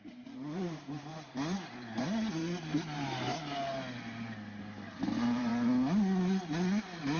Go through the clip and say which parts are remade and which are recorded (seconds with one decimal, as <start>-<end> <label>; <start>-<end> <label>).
0.0-3.3 remade; 3.3-4.6 recorded; 4.6-5.5 remade; 5.5-6.8 recorded; 6.8-7.2 remade